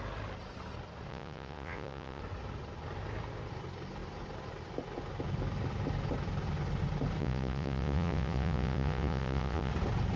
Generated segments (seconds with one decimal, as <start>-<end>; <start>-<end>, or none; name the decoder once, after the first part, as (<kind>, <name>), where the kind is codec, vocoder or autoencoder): 1.1-2.2 (vocoder, Vocos); 7.2-9.7